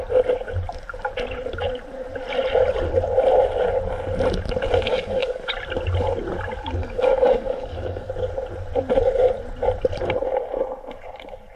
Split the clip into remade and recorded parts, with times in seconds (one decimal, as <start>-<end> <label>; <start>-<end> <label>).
0.0-4.9 recorded; 4.9-5.5 remade; 5.5-6.8 recorded; 6.8-8.1 remade; 8.1-11.6 recorded